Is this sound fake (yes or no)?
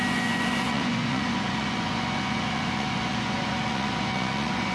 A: yes